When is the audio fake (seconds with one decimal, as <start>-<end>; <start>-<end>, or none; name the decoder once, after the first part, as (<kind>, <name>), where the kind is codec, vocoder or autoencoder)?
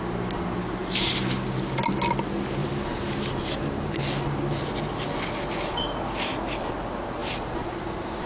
2.6-4.0 (vocoder, BigVGAN v2); 7.2-8.3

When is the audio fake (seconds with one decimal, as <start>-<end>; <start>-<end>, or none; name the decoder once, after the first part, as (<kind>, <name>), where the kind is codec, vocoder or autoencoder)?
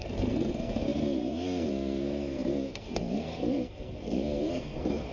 0.0-5.1 (codec, SNAC)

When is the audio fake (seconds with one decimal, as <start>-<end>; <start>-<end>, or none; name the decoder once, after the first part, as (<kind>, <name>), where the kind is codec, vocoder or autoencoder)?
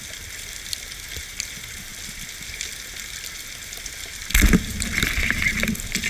none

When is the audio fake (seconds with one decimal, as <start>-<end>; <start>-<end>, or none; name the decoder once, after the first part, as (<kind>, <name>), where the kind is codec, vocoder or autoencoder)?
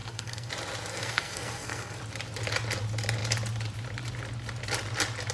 0.0-0.5 (codec, SNAC); 0.9-2.0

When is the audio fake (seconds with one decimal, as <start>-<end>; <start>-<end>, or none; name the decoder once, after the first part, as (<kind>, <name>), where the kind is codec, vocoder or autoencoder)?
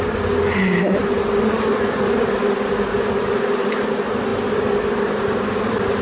none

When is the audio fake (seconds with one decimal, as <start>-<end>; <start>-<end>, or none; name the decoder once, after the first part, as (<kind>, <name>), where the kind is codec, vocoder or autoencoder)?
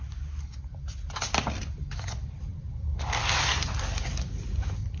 none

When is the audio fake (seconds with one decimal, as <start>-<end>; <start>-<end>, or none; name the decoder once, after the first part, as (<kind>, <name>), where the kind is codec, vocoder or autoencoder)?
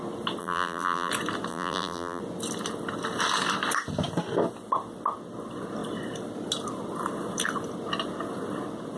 0.4-1.1 (vocoder, BigVGAN v2); 1.5-2.2